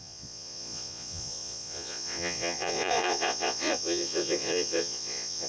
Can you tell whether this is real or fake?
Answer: fake